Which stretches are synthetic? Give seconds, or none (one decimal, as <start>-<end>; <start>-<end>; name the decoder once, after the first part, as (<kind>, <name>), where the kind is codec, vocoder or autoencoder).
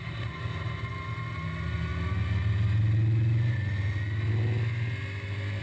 none